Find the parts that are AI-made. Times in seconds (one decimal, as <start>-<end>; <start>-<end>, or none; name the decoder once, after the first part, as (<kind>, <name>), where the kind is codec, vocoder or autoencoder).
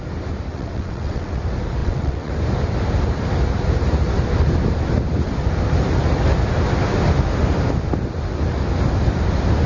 0.5-1.4 (vocoder, WaveNeXt); 1.8-2.3